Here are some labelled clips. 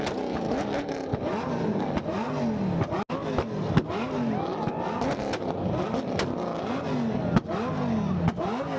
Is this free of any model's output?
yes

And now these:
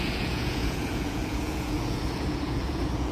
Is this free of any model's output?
no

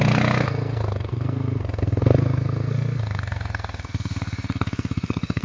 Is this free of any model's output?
no